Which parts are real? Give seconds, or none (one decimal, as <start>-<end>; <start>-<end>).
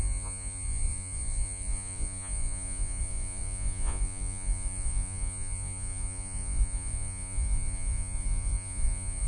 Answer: none